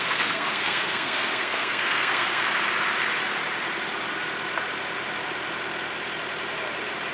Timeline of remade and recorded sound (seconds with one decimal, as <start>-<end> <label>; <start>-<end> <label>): 0.0-2.4 remade; 2.4-7.1 recorded